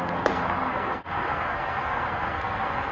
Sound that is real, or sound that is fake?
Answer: fake